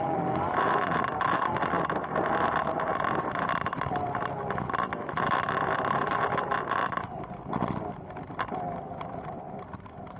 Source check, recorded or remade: remade